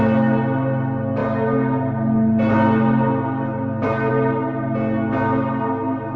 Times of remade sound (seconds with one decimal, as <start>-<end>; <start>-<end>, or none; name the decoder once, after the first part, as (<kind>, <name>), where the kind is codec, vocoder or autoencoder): none